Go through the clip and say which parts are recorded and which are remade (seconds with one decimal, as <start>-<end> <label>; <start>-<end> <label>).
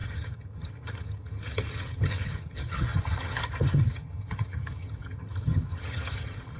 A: 0.0-6.6 remade